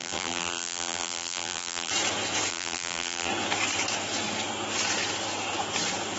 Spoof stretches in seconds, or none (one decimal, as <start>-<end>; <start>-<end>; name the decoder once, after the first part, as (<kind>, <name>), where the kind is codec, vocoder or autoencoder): 0.0-1.9 (vocoder, BigVGAN v2); 2.5-3.3